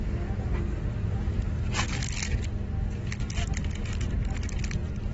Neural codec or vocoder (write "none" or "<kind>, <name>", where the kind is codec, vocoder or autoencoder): none